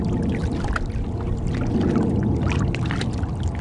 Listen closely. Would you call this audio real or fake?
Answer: real